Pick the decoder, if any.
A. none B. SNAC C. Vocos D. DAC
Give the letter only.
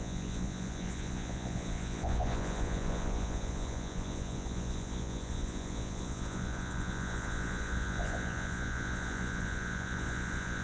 C